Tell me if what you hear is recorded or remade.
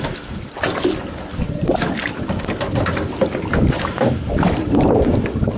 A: recorded